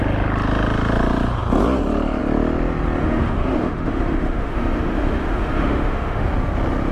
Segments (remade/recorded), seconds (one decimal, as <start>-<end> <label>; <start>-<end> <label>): 0.0-3.0 recorded; 3.0-6.3 remade; 6.3-6.9 recorded